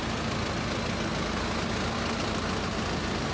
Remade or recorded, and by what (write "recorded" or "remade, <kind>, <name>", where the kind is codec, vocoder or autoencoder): recorded